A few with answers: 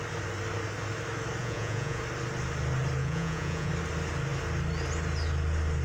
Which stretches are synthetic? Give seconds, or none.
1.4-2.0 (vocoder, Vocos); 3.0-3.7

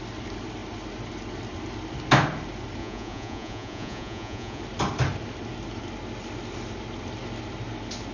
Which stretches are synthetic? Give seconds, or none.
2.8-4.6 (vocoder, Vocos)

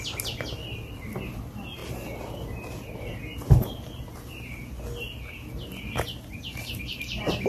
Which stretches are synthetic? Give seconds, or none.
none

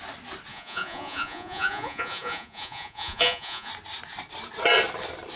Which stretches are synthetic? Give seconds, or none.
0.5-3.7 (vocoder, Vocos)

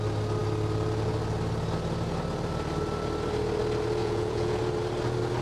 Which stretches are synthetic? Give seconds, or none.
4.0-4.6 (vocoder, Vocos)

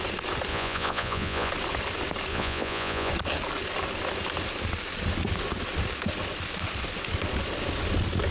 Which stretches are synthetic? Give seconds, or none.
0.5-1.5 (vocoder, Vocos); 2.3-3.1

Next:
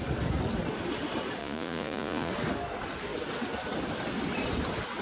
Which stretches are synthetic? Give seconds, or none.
1.4-2.3 (vocoder, Vocos)